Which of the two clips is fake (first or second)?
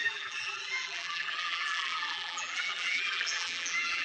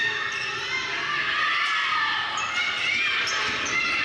first